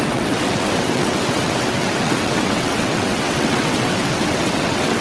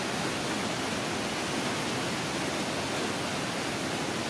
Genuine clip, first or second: second